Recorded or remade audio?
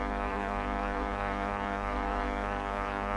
remade